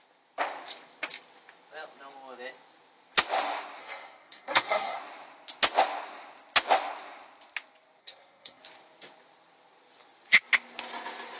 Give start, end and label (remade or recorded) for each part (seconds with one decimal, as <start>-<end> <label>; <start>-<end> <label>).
0.0-3.8 recorded; 3.8-5.0 remade; 5.0-8.0 recorded; 8.0-8.6 remade; 8.6-11.4 recorded